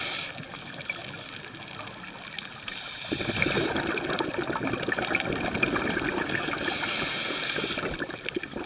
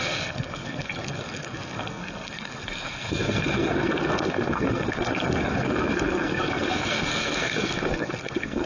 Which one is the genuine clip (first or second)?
first